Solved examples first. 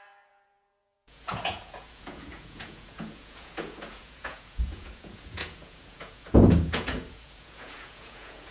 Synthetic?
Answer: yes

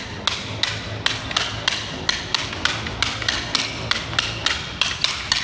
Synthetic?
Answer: no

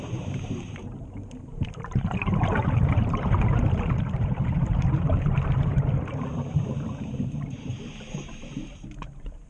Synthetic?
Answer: yes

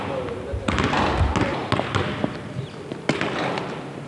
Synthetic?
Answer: no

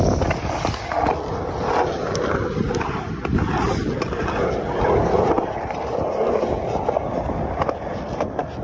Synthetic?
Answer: no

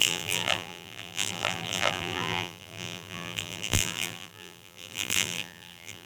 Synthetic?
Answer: yes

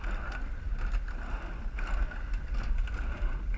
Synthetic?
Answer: no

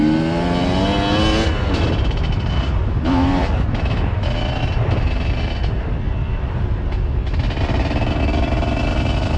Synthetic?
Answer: no